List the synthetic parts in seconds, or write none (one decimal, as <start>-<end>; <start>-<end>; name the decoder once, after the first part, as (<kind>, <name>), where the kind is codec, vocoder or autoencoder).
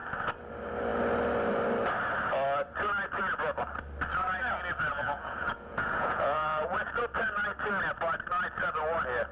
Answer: 4.9-6.9 (vocoder, Vocos)